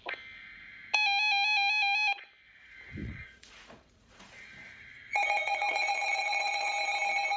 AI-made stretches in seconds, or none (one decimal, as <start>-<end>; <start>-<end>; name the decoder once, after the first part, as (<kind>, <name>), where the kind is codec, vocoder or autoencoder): 3.0-6.7 (vocoder, Vocos)